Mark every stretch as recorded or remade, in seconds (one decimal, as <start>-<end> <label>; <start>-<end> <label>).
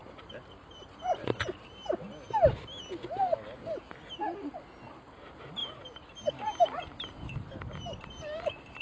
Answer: 0.0-8.8 recorded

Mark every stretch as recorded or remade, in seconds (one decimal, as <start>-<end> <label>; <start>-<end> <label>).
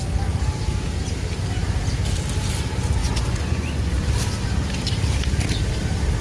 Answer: 0.0-3.0 recorded; 3.0-3.9 remade; 3.9-6.2 recorded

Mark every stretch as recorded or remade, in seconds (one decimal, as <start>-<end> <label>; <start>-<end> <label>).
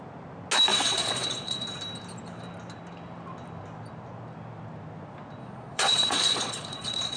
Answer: 0.0-0.7 recorded; 0.7-1.8 remade; 1.8-5.4 recorded; 5.4-7.2 remade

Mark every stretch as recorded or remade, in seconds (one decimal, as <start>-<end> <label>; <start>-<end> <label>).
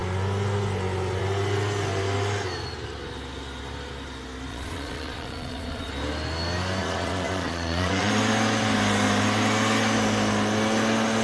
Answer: 0.0-4.5 recorded; 4.5-5.9 remade; 5.9-6.8 recorded; 6.8-8.1 remade; 8.1-11.2 recorded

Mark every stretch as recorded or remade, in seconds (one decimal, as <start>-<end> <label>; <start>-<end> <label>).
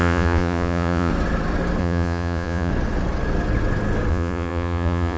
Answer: 0.0-1.1 remade; 1.1-1.8 recorded; 1.8-2.7 remade; 2.7-4.1 recorded; 4.1-5.2 remade